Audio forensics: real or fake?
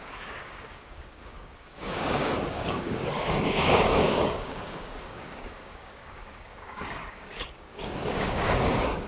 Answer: fake